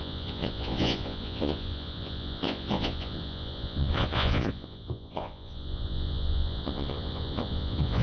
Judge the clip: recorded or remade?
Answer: remade